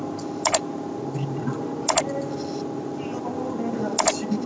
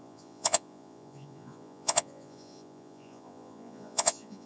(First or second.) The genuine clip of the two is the first